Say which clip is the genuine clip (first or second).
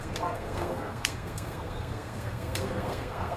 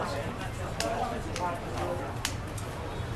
second